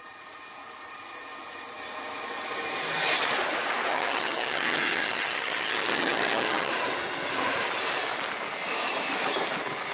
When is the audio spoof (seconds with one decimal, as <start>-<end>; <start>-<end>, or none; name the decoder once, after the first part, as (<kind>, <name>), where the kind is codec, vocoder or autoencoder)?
3.9-6.7 (vocoder, HiFi-GAN)